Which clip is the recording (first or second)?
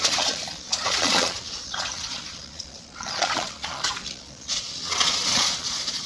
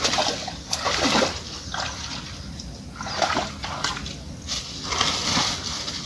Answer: second